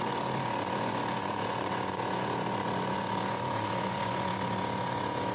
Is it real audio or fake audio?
fake